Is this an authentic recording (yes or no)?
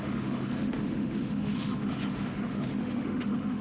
no